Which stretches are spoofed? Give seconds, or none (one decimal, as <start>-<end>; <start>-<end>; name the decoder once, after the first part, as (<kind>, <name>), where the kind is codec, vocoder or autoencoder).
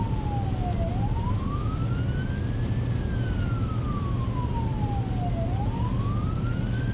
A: none